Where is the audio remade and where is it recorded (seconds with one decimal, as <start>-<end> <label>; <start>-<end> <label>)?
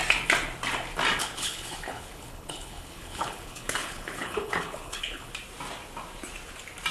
0.0-1.2 recorded; 1.2-5.3 remade; 5.3-6.9 recorded